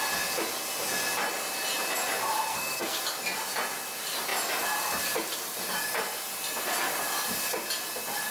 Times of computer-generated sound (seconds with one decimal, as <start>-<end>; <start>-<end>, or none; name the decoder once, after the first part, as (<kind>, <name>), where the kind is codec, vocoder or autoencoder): 2.5-3.0 (codec, SNAC)